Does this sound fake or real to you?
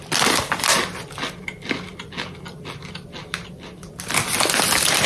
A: real